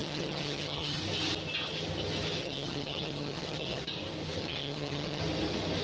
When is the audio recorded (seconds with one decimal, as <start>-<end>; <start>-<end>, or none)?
1.0-2.4; 3.8-4.4; 5.2-5.8